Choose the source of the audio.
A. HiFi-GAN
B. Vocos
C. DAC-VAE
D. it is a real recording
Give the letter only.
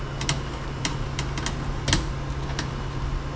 D